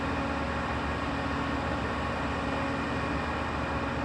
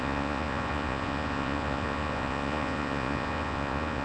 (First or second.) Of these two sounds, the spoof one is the second